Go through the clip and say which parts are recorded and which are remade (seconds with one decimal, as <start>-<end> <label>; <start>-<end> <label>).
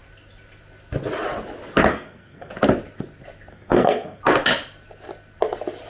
0.0-1.9 recorded; 1.9-2.5 remade; 2.5-3.5 recorded; 3.5-4.2 remade; 4.2-5.9 recorded